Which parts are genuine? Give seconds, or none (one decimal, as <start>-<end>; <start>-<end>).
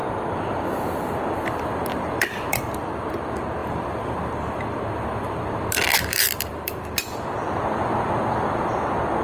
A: 0.0-1.9; 2.6-3.6; 8.7-9.2